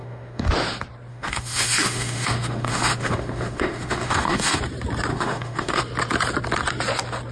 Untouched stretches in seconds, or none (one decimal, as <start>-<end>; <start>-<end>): 0.5-1.1; 4.6-5.1; 5.8-7.3